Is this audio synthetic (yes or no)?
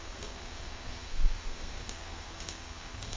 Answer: yes